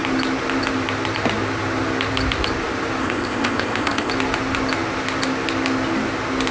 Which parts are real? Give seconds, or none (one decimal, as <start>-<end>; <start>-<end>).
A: 0.0-3.0; 4.1-6.5